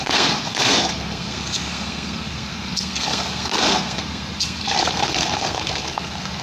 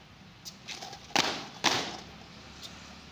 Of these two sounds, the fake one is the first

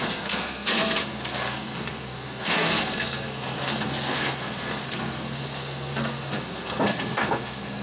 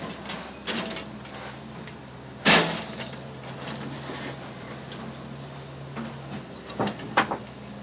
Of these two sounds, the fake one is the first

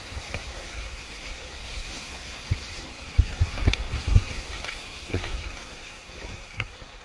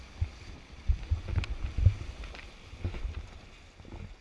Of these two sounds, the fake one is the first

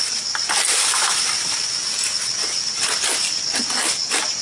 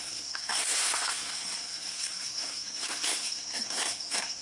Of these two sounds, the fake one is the second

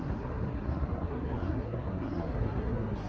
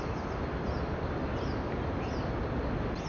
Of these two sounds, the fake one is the first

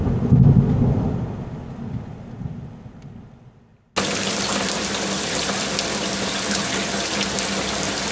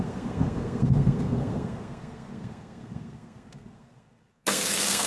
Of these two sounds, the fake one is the second